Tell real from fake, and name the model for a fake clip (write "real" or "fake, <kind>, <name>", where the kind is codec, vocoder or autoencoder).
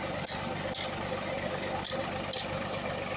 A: real